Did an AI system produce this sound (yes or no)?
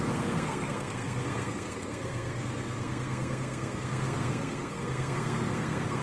yes